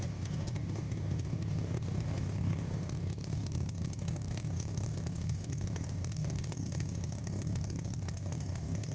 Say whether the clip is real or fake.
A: fake